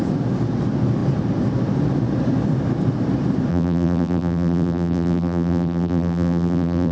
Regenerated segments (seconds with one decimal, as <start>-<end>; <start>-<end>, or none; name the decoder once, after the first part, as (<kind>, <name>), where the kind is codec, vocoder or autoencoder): 3.5-6.9 (vocoder, BigVGAN v2)